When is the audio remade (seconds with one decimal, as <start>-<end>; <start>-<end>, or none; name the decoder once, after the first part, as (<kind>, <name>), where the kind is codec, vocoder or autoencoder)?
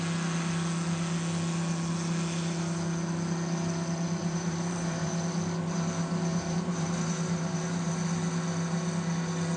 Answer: 4.2-5.2 (vocoder, BigVGAN v2); 6.3-7.9